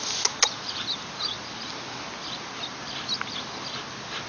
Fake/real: real